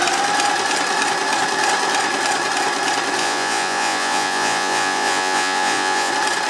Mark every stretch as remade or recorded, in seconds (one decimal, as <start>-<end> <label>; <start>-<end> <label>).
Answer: 0.0-3.2 recorded; 3.2-6.1 remade; 6.1-6.5 recorded